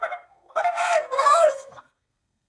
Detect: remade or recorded remade